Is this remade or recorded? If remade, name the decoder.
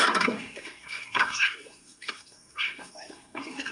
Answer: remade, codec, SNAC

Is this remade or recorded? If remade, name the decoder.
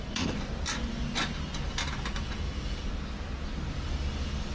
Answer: recorded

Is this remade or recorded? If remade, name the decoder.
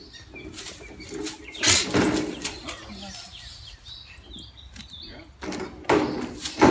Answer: recorded